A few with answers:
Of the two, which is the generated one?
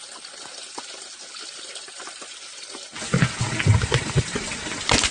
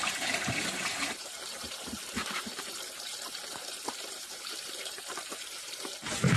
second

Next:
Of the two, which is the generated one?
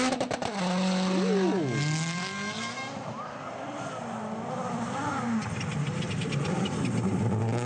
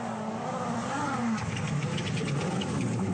second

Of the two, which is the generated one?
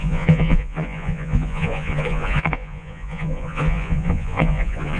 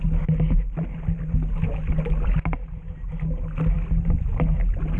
first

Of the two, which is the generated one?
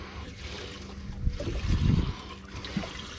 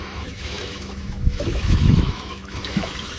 second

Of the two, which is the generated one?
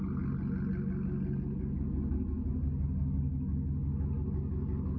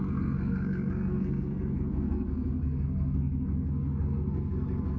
second